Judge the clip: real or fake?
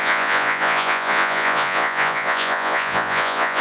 fake